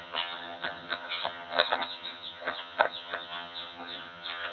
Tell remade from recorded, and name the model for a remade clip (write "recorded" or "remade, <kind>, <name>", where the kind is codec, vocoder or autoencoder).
remade, vocoder, HiFi-GAN